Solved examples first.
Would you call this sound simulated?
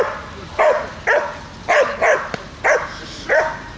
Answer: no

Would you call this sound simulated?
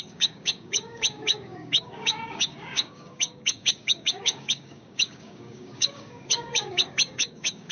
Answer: yes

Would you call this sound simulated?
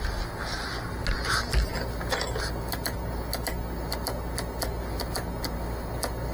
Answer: no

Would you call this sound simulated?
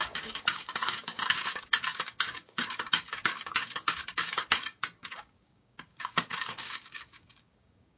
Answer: yes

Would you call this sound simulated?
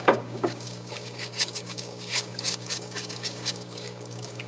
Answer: yes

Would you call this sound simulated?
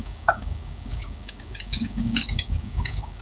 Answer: yes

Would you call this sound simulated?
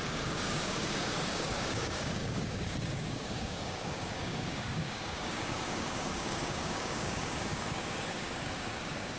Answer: yes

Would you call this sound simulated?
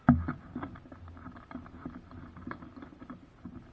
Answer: no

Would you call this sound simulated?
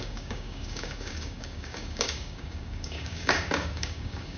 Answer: yes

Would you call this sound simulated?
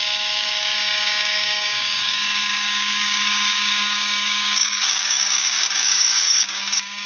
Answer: yes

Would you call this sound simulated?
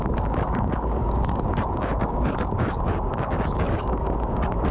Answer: yes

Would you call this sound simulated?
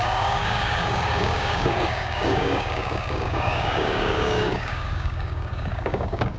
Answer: yes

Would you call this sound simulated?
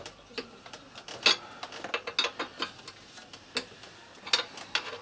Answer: no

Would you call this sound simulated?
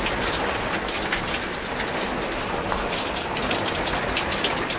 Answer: no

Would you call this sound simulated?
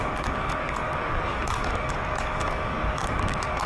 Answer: yes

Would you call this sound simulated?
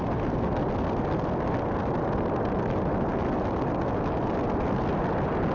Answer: no